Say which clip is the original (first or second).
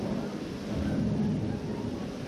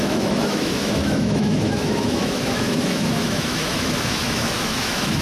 first